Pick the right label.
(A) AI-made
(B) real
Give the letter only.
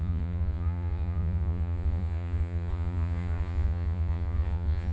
A